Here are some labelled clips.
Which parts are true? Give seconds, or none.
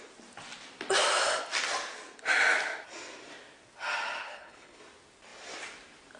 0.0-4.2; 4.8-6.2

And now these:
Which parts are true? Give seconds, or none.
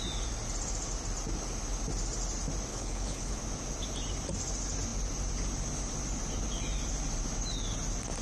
0.0-2.7; 3.4-8.2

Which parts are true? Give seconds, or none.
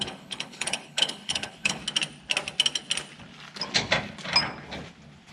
1.8-5.3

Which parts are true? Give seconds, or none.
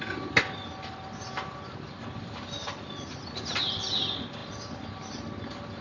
0.0-5.8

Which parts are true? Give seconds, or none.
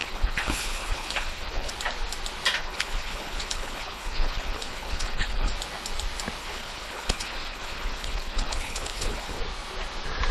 1.7-2.6; 5.5-6.4; 9.4-10.3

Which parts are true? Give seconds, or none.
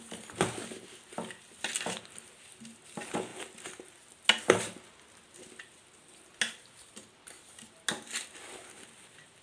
0.0-9.4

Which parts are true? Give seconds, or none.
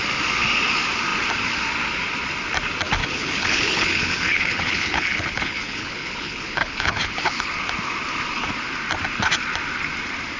0.0-3.0; 7.5-10.4